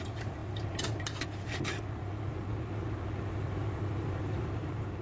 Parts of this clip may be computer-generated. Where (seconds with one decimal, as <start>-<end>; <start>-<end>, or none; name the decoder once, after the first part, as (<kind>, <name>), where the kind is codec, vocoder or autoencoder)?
none